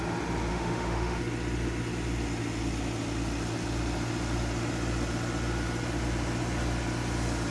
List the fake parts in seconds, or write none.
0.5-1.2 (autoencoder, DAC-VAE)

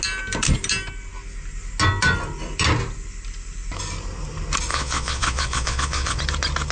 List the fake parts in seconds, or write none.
4.7-6.2 (vocoder, Vocos)

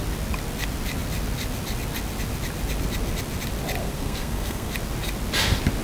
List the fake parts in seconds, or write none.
3.8-4.7 (codec, SNAC)

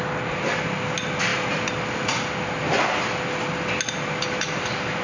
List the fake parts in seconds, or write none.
none

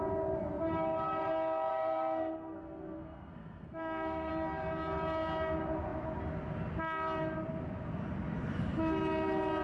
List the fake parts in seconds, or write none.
1.7-4.3 (codec, SNAC)